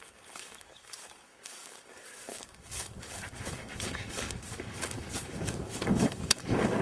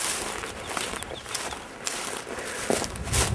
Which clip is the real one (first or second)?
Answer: second